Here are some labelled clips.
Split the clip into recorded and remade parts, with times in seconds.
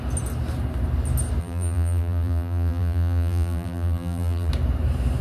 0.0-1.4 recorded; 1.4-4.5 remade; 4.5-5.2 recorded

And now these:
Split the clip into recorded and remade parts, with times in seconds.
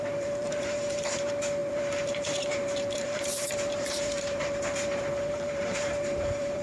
0.0-6.6 remade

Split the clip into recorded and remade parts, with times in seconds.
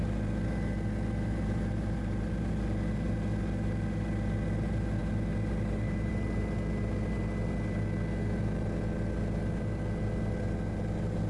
0.0-11.3 recorded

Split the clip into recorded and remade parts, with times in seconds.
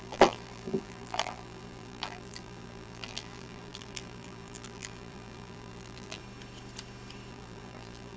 0.0-6.2 remade; 6.2-7.3 recorded; 7.3-8.2 remade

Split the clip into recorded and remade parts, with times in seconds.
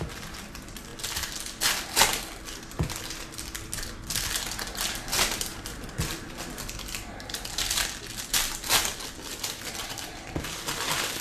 0.0-0.9 remade; 0.9-4.9 recorded; 4.9-11.2 remade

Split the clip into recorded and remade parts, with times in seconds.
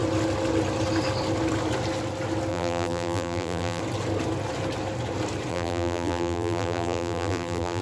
0.0-2.5 recorded; 2.5-3.8 remade; 3.8-5.5 recorded; 5.5-7.8 remade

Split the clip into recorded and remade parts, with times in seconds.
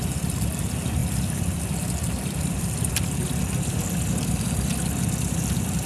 0.0-3.2 remade; 3.2-4.3 recorded; 4.3-5.9 remade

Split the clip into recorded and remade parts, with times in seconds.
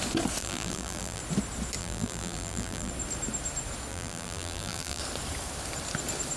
0.0-0.4 recorded; 0.4-1.2 remade; 1.2-1.8 recorded; 1.8-2.9 remade; 2.9-3.9 recorded; 3.9-5.0 remade; 5.0-6.4 recorded